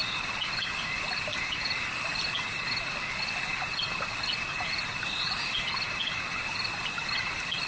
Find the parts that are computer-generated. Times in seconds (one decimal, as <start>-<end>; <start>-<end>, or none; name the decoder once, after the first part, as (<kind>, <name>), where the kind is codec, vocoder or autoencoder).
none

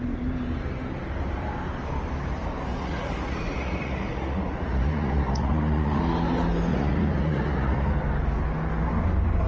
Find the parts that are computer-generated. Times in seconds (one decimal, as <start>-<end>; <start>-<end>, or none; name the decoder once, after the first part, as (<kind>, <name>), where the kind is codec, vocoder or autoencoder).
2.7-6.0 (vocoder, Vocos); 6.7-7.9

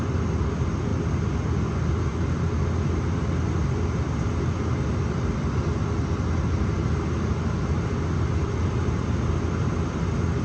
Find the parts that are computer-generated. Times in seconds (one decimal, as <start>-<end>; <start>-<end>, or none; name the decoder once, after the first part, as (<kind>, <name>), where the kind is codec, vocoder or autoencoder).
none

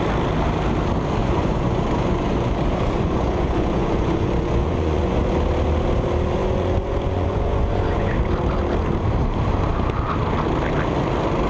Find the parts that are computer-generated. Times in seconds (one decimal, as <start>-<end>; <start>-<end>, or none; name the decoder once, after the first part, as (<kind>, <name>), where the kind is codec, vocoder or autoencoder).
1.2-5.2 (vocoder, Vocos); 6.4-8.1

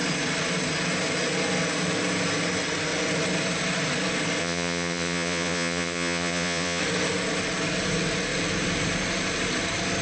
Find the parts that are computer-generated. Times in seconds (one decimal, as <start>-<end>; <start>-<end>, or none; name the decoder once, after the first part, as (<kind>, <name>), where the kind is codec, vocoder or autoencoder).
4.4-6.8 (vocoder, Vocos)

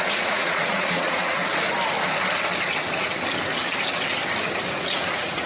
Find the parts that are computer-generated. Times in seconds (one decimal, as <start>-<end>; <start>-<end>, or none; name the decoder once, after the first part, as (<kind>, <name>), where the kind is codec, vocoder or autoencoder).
0.0-1.4 (vocoder, Vocos); 4.7-5.5